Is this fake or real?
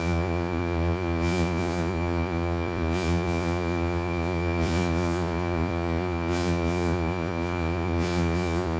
fake